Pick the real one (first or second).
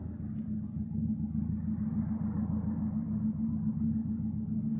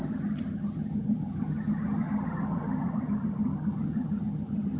first